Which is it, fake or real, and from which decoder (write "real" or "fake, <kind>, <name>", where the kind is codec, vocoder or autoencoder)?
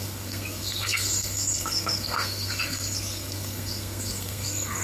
fake, codec, SNAC